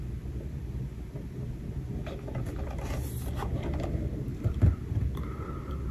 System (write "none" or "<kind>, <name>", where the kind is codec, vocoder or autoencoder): none